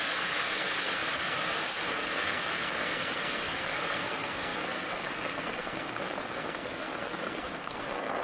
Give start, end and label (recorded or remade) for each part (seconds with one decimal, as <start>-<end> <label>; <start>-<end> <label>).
0.0-8.2 remade